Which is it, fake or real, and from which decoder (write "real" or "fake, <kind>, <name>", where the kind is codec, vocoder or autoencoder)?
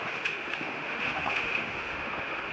fake, autoencoder, DAC-VAE